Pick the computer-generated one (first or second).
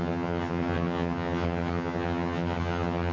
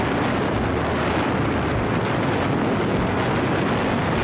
first